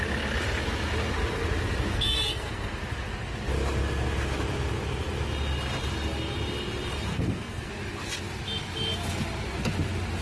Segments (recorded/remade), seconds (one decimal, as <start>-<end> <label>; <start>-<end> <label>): 0.0-1.9 recorded; 1.9-2.8 remade; 2.8-7.1 recorded; 7.1-7.7 remade; 7.7-10.2 recorded